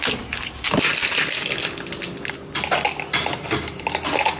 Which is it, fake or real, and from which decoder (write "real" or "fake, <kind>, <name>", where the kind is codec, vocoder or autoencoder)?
real